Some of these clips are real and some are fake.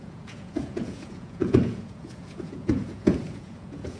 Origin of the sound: fake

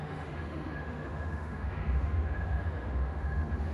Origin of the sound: fake